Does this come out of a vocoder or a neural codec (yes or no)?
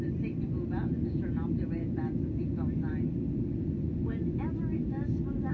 no